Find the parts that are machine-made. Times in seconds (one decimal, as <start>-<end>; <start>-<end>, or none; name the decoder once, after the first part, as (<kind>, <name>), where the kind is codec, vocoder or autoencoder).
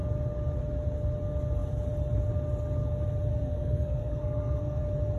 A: 3.3-4.8 (codec, SNAC)